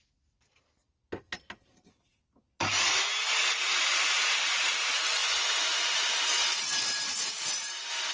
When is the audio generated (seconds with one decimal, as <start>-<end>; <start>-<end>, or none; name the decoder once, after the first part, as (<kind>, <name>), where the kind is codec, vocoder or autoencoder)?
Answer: none